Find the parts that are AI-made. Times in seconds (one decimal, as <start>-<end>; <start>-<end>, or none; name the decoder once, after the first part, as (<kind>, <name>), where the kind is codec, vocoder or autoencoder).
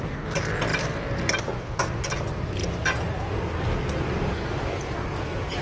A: none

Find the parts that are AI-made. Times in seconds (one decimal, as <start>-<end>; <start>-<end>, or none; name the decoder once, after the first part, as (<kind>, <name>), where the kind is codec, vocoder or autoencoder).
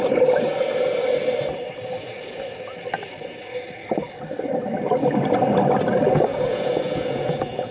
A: 6.3-7.7 (vocoder, Vocos)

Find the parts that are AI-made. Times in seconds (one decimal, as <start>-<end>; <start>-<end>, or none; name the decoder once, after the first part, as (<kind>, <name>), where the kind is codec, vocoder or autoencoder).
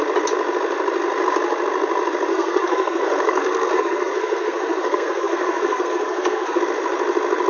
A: 2.3-6.6 (codec, SNAC)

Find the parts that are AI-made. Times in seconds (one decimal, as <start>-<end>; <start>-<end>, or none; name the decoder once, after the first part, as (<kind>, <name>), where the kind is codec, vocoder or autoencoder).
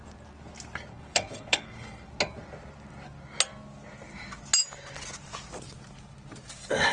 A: 0.9-2.1 (codec, HILCodec)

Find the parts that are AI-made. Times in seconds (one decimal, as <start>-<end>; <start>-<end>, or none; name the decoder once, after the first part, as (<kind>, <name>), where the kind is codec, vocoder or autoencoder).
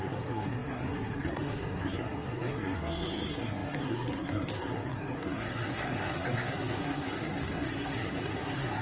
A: 0.0-8.8 (codec, SNAC)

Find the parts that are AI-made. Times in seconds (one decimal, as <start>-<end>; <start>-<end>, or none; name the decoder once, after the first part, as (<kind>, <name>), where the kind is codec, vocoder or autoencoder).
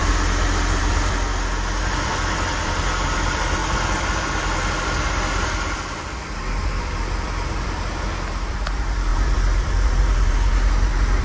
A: 0.8-1.3 (vocoder, BigVGAN v2); 1.8-11.2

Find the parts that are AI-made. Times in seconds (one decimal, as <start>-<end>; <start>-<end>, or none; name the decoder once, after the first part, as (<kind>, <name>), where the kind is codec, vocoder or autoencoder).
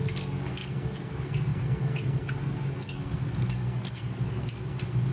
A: 0.0-5.1 (codec, SNAC)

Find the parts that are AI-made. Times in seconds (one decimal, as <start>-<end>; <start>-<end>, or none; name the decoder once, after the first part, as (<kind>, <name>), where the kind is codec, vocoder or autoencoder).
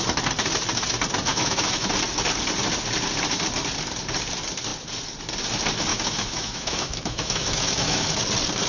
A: 1.3-1.9 (autoencoder, DAC-VAE); 5.9-8.2